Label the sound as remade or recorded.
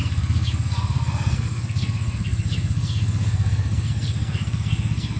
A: remade